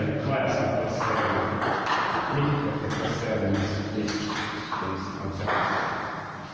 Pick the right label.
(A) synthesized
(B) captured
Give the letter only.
B